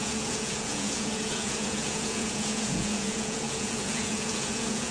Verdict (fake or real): fake